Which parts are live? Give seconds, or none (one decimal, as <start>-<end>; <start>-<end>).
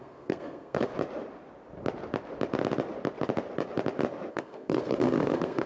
0.9-4.3